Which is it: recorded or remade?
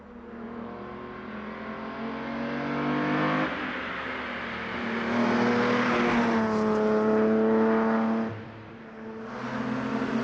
recorded